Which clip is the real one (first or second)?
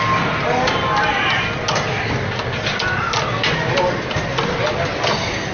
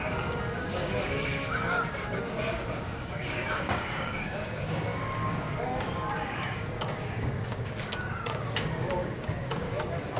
first